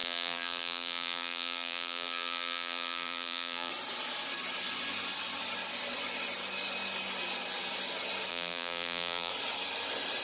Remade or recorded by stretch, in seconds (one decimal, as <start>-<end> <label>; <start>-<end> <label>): 0.0-3.7 remade; 3.7-8.3 recorded; 8.3-9.3 remade; 9.3-10.2 recorded

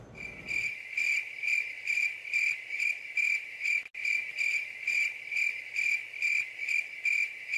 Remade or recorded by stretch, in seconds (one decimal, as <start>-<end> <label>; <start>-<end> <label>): 0.0-1.0 recorded; 1.0-3.8 remade; 3.8-7.6 recorded

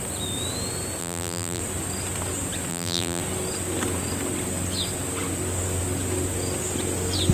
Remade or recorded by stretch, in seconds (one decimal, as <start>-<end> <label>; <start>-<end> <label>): 0.0-1.0 recorded; 1.0-1.6 remade; 1.6-2.7 recorded; 2.7-3.2 remade; 3.2-7.3 recorded

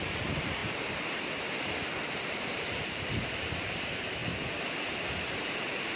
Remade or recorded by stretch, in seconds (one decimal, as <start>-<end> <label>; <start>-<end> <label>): 0.0-0.6 remade; 0.6-2.1 recorded; 2.1-4.2 remade; 4.2-5.3 recorded; 5.3-6.0 remade

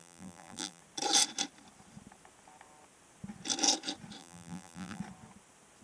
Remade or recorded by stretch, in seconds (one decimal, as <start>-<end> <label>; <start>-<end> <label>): 0.0-0.8 remade; 0.8-4.2 recorded; 4.2-5.0 remade; 5.0-5.8 recorded

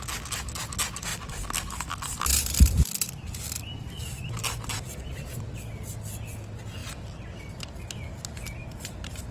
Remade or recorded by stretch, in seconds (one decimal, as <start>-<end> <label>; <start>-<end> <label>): 0.0-1.1 recorded; 1.1-5.5 remade; 5.5-6.8 recorded; 6.8-7.5 remade; 7.5-8.6 recorded; 8.6-9.3 remade

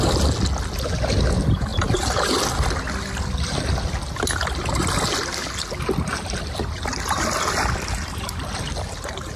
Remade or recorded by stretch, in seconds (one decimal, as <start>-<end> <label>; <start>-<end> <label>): 0.0-1.7 recorded; 1.7-2.4 remade; 2.4-9.4 recorded

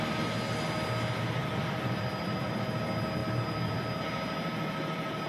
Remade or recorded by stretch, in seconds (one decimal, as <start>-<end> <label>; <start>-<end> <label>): 0.0-1.4 recorded; 1.4-2.6 remade; 2.6-3.2 recorded; 3.2-4.0 remade; 4.0-5.3 recorded